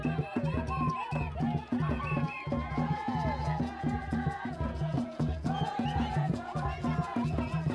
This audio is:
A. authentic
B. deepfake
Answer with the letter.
B